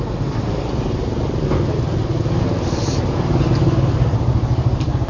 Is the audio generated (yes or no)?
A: no